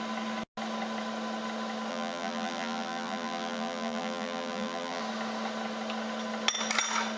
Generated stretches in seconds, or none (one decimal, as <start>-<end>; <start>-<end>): 1.9-5.0